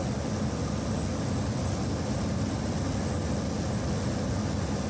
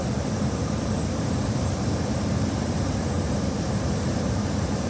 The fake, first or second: second